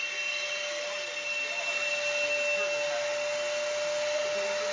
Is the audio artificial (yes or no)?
no